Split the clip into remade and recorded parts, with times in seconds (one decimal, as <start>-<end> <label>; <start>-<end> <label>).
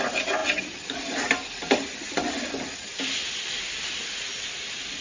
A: 0.0-5.0 recorded